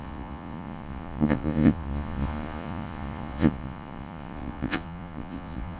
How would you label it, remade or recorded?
remade